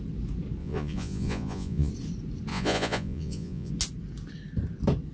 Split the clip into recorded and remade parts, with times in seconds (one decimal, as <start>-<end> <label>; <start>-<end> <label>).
0.0-0.6 recorded; 0.6-1.9 remade; 1.9-2.5 recorded; 2.5-3.7 remade; 3.7-5.1 recorded